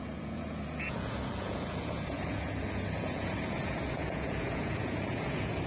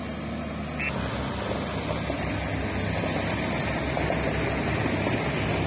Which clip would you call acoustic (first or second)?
second